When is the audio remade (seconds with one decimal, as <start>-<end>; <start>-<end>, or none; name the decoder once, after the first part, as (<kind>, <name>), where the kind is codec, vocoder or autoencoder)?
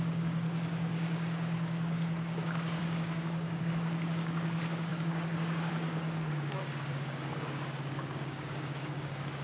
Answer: 0.0-9.4 (codec, DAC)